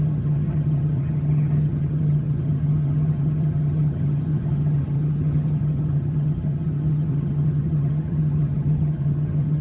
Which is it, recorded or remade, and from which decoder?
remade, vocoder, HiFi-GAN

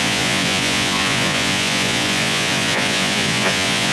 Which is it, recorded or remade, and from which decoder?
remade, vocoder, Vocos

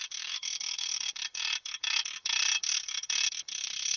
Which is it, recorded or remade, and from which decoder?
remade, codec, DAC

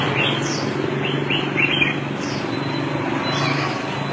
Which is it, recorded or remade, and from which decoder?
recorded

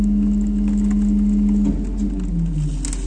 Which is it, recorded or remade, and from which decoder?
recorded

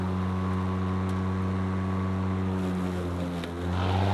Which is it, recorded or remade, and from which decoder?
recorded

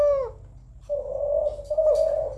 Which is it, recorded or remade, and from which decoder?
recorded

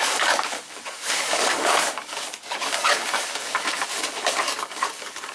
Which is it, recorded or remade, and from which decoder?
remade, codec, DAC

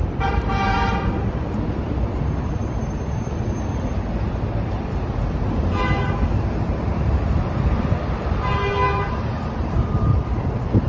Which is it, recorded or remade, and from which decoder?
remade, vocoder, BigVGAN v2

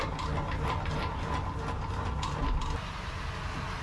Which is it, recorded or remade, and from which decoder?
recorded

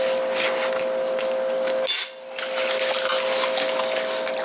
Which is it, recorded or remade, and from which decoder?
recorded